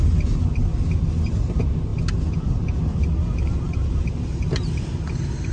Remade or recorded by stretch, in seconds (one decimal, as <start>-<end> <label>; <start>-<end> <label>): 0.0-5.5 recorded